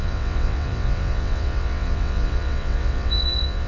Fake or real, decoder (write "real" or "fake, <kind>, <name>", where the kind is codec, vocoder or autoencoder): fake, vocoder, WaveNeXt